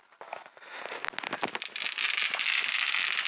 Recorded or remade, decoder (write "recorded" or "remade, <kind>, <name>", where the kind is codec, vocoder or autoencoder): recorded